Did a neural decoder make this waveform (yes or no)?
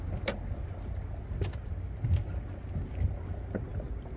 no